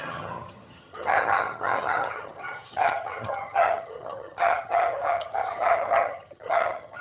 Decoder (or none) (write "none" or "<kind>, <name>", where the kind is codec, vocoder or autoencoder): vocoder, HiFi-GAN